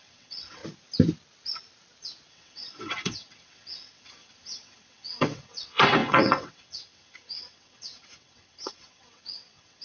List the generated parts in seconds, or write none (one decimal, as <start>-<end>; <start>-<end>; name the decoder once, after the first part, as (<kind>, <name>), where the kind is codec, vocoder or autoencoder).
0.0-0.6 (vocoder, WaveNeXt); 2.3-9.8

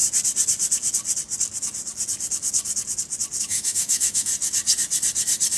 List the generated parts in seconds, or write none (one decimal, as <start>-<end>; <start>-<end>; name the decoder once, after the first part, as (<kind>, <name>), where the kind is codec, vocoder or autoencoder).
3.4-4.3 (autoencoder, DAC-VAE)

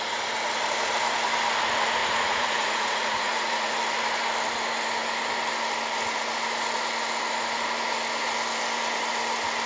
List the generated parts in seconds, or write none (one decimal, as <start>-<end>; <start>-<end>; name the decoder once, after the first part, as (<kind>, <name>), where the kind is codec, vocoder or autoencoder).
2.0-3.7 (vocoder, Vocos)

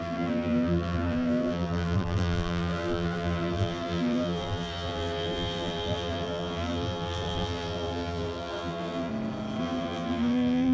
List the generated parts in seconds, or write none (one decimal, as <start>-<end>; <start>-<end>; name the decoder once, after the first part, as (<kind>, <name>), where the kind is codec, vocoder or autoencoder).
0.0-9.1 (vocoder, BigVGAN v2); 9.6-10.7

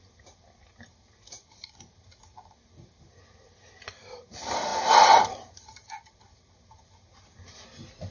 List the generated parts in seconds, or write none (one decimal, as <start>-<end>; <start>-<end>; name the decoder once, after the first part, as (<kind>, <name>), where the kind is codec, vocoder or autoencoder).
none

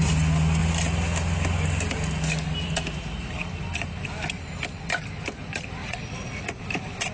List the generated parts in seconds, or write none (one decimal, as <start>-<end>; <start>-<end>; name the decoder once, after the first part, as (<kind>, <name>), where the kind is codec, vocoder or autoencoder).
5.8-6.6 (vocoder, Vocos)